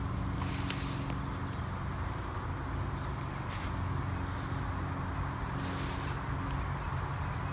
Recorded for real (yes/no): yes